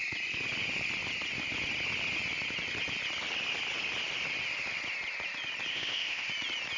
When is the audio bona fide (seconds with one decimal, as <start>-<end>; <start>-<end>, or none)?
0.0-5.7; 6.3-6.8